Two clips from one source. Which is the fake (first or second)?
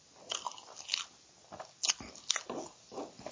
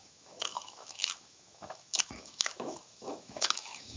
second